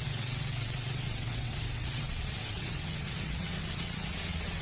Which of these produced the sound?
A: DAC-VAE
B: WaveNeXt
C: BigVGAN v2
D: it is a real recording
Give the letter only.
B